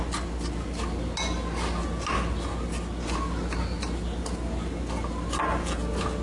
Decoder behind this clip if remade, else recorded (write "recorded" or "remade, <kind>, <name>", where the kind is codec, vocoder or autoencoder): recorded